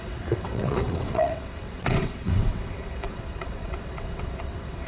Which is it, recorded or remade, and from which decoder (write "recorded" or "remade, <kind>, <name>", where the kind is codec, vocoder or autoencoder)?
remade, vocoder, WaveNeXt